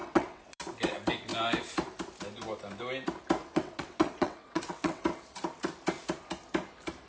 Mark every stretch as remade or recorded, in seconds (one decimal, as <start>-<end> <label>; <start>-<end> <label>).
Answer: 0.0-0.6 remade; 0.6-3.4 recorded; 3.4-5.0 remade; 5.0-7.1 recorded